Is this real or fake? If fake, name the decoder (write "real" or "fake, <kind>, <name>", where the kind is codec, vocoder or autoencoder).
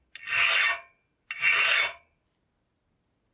real